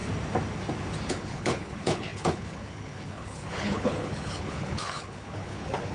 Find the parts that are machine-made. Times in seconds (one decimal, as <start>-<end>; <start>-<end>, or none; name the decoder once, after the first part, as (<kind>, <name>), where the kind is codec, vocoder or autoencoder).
1.1-5.9 (codec, HILCodec)